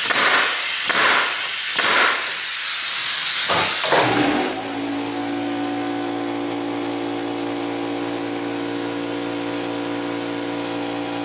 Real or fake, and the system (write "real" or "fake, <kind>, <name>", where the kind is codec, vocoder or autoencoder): real